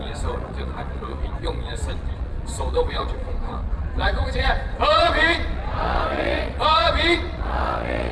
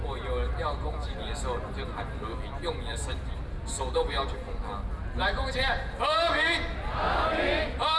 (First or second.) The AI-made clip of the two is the first